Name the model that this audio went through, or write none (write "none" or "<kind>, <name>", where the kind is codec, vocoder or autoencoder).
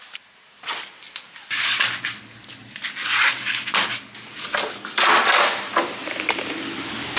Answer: none